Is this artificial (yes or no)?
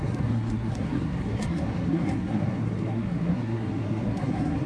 yes